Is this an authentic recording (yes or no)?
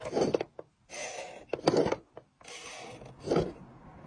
yes